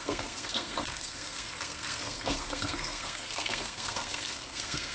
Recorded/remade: remade